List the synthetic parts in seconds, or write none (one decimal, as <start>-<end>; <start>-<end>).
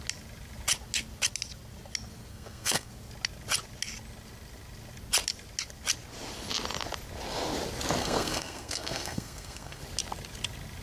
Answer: 2.3-2.9; 8.0-9.8